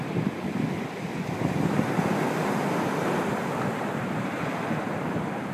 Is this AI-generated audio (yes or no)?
no